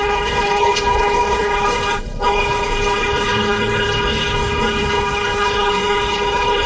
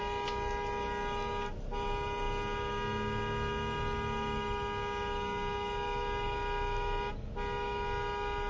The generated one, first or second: first